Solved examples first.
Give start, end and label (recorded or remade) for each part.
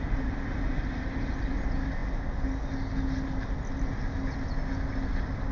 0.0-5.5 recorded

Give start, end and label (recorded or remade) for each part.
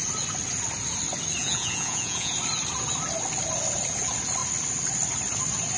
0.0-1.4 recorded; 1.4-2.3 remade; 2.3-5.8 recorded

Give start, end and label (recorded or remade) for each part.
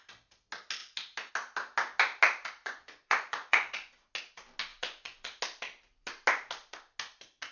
0.0-2.6 recorded; 2.6-3.9 remade; 3.9-4.7 recorded; 4.7-5.4 remade; 5.4-7.5 recorded